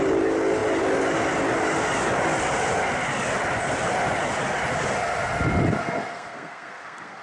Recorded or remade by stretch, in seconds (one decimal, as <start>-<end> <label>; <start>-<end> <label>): 0.0-6.1 recorded; 6.1-7.2 remade